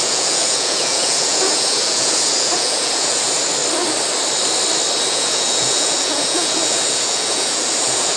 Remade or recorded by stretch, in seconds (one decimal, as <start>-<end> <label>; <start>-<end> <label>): 0.0-3.6 remade; 3.6-5.1 recorded; 5.1-8.2 remade